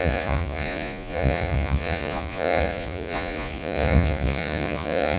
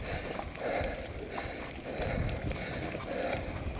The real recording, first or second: second